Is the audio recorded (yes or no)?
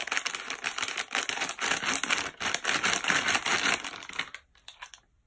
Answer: yes